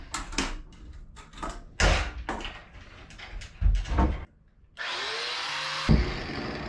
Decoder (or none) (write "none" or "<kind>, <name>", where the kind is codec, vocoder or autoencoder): none